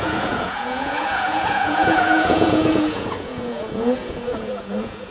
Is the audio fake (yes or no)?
yes